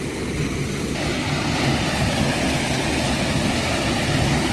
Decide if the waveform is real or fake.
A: real